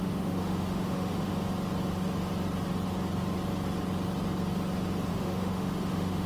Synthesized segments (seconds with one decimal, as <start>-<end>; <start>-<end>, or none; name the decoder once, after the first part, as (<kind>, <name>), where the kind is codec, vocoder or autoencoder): 0.0-1.3 (autoencoder, DAC-VAE); 5.1-6.3